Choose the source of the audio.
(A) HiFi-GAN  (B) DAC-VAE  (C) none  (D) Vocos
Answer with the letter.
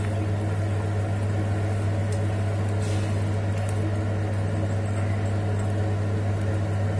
C